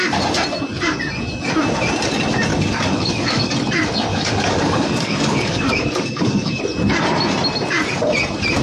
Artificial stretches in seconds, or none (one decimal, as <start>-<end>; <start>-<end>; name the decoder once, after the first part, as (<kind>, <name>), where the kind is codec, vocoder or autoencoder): 2.5-3.5 (codec, DAC); 4.1-6.6